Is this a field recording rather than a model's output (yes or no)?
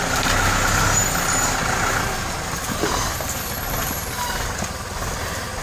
yes